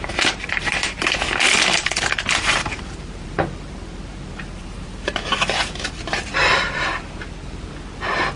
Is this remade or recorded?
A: remade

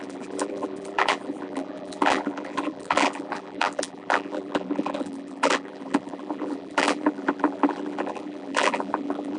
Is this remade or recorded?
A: remade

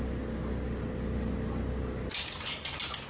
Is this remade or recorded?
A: recorded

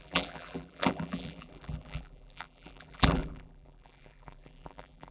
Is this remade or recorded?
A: remade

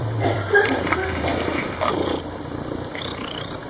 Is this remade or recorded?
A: remade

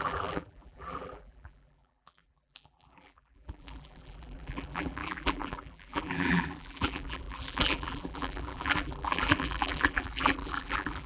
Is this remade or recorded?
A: remade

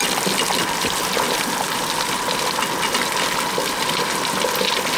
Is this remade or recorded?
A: recorded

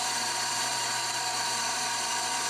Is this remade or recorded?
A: remade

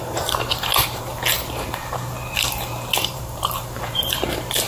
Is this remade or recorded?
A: remade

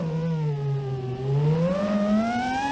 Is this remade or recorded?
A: recorded